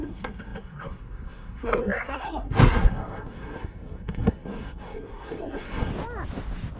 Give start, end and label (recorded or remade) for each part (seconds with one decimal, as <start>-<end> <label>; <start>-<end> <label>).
0.0-5.9 remade; 5.9-6.8 recorded